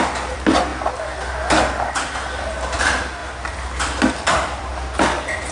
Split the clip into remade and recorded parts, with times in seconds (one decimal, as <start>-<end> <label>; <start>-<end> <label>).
0.0-0.7 remade; 0.7-2.8 recorded; 2.8-3.2 remade; 3.2-3.8 recorded; 3.8-4.7 remade; 4.7-5.5 recorded